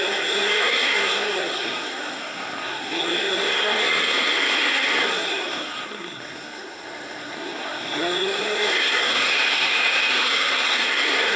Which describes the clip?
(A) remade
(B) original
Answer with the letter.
A